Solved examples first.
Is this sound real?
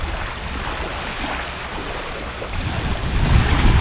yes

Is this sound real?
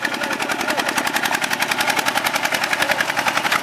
yes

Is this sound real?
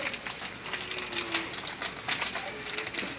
yes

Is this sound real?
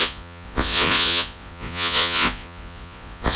no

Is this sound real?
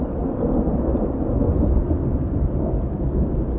yes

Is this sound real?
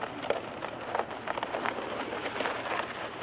yes